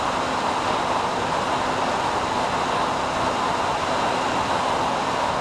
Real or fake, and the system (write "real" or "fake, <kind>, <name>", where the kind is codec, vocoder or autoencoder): real